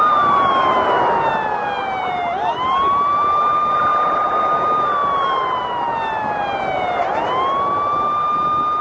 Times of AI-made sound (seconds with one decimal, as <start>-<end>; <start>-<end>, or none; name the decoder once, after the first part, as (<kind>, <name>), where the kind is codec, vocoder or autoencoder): 3.9-4.4 (vocoder, BigVGAN v2)